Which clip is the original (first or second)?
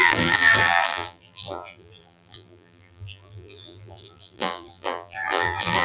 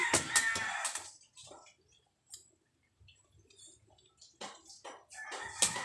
second